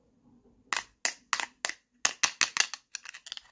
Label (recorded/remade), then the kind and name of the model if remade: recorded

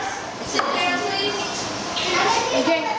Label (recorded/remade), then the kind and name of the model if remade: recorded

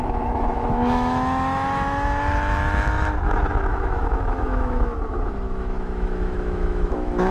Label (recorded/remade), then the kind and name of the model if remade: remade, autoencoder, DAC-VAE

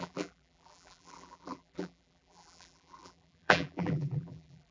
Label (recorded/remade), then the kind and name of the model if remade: remade, vocoder, BigVGAN v2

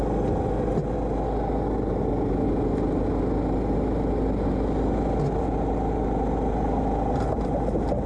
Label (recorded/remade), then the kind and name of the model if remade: recorded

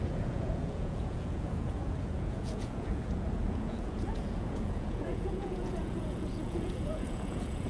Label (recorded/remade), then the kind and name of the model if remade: remade, vocoder, Vocos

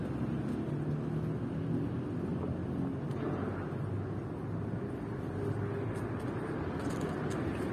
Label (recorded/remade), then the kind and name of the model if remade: recorded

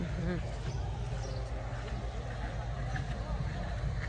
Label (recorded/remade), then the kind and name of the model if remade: recorded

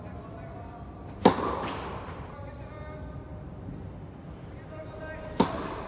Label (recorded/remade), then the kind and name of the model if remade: recorded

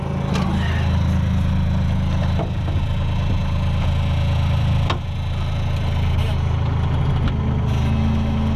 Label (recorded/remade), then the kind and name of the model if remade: recorded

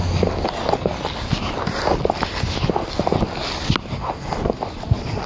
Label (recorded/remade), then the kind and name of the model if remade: recorded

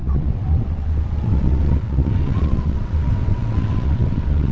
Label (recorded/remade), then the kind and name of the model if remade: remade, vocoder, WaveNeXt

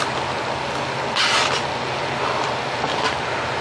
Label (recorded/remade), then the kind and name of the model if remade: recorded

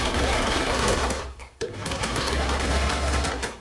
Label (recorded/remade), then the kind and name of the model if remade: remade, codec, SNAC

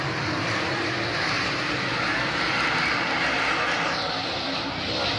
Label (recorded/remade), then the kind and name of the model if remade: recorded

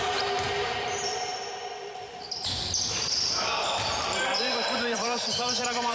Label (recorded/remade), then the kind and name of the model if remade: remade, vocoder, BigVGAN v2